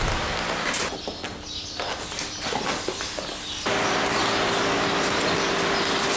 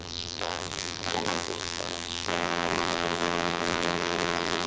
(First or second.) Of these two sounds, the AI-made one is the second